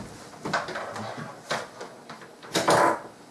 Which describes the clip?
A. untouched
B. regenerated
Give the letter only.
A